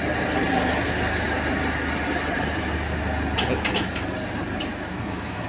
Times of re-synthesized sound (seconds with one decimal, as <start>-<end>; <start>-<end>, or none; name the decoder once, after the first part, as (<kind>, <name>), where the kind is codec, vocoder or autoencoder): 4.7-5.5 (autoencoder, DAC-VAE)